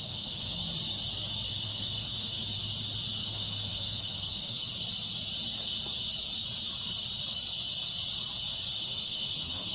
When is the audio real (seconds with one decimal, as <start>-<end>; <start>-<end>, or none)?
0.6-1.5; 2.4-3.2; 4.7-8.8